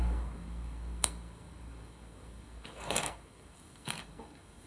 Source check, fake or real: fake